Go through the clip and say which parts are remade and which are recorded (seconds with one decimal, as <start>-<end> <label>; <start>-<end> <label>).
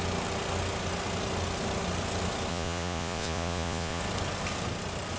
0.0-2.5 recorded; 2.5-4.0 remade; 4.0-5.2 recorded